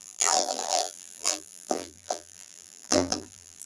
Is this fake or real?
fake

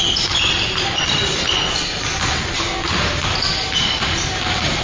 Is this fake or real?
real